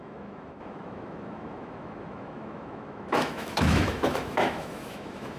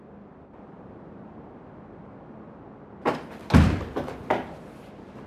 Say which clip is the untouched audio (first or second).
second